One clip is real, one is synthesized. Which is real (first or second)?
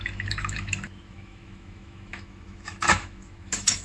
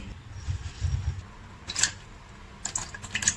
second